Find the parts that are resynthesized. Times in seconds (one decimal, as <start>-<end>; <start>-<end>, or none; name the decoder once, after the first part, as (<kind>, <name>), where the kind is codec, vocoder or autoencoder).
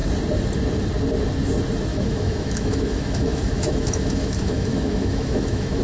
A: 1.9-5.8 (autoencoder, DAC-VAE)